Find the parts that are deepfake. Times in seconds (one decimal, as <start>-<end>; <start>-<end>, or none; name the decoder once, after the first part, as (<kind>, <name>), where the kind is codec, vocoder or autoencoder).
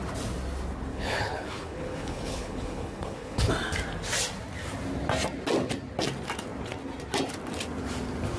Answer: 0.9-3.5 (codec, HILCodec)